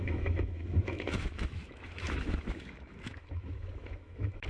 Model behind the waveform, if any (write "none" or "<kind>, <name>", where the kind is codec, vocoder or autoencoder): autoencoder, DAC-VAE